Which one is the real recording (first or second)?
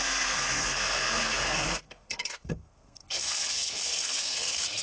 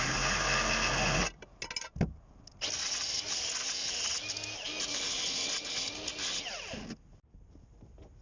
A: second